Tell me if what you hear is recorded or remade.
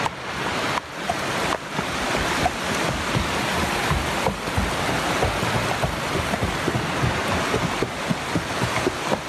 recorded